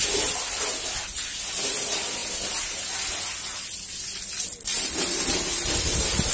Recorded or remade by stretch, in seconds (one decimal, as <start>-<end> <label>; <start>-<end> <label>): 0.0-6.3 recorded